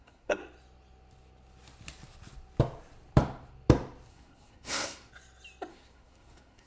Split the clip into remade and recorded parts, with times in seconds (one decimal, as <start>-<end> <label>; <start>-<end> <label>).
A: 0.0-0.4 remade; 0.4-4.1 recorded; 4.1-5.1 remade; 5.1-5.7 recorded; 5.7-6.7 remade